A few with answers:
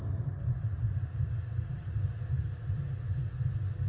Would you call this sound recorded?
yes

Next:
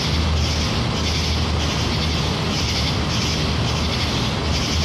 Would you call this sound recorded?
yes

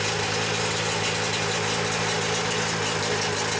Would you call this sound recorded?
yes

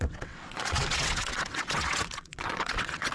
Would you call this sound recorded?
no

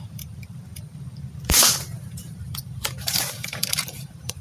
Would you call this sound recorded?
no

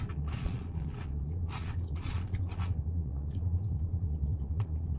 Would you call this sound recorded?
no